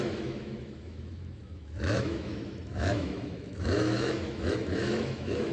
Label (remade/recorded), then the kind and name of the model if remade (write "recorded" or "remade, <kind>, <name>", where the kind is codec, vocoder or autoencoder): remade, autoencoder, DAC-VAE